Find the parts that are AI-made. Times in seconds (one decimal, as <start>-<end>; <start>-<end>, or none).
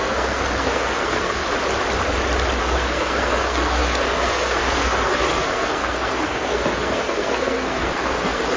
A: 0.0-1.4; 2.6-8.6